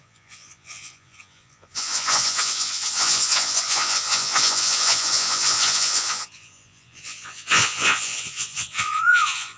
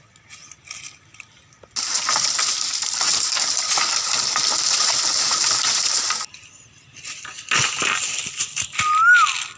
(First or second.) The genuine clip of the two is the second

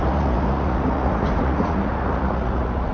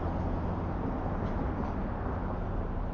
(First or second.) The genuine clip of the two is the second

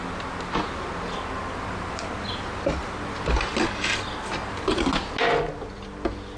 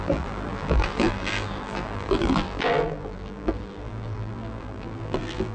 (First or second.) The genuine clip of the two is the first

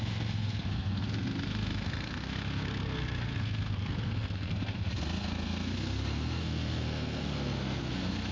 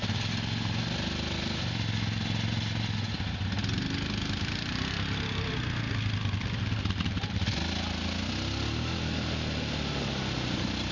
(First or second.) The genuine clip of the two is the second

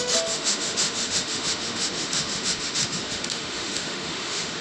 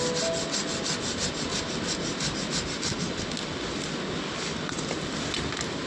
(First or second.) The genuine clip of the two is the second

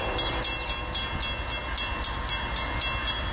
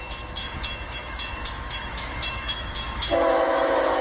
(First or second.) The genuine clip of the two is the first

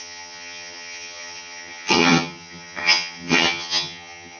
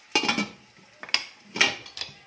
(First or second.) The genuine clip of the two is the second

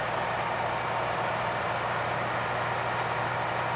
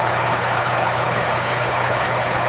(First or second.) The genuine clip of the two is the first